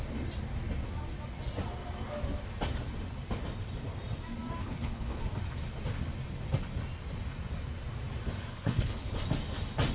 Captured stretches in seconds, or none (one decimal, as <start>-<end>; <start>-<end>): 0.0-4.6; 5.2-8.5; 9.2-9.9